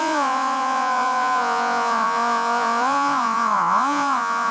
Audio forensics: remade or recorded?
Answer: remade